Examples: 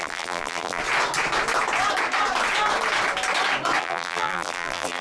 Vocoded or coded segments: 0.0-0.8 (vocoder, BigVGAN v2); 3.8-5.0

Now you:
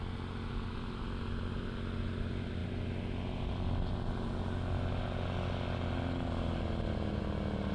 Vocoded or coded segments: none